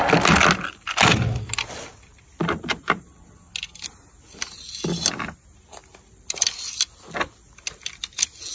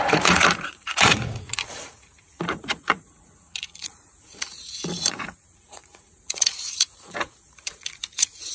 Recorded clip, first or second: first